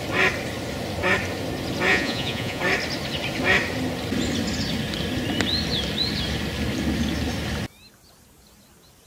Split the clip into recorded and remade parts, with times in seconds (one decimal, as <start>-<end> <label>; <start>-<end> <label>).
0.0-1.9 recorded; 1.9-2.6 remade; 2.6-9.1 recorded